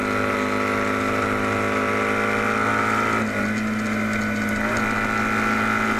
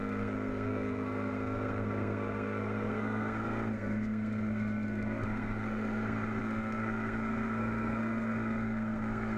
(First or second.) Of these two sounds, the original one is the first